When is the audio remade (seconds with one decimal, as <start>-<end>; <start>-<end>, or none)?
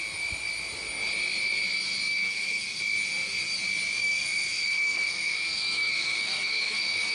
2.1-2.8; 4.0-7.1